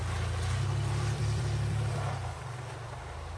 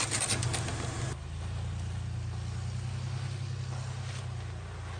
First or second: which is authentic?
second